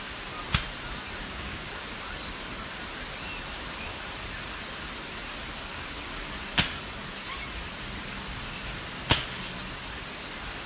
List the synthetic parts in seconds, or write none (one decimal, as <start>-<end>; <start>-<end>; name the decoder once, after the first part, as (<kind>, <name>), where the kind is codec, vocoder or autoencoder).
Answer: 1.2-1.7 (codec, DAC)